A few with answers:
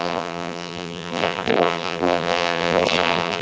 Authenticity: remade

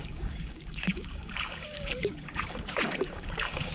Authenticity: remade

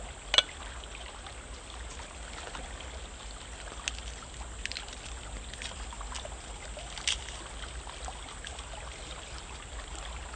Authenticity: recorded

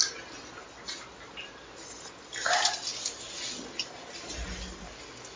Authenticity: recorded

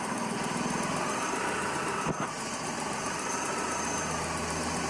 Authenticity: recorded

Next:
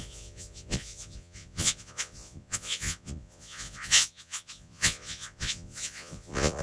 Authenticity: remade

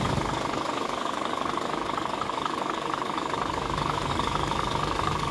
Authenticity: remade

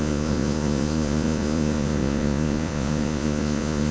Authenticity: remade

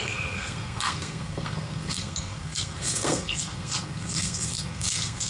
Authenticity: remade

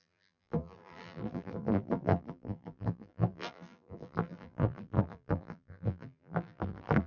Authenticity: remade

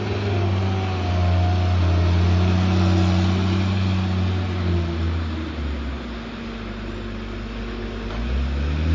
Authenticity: recorded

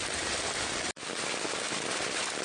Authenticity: recorded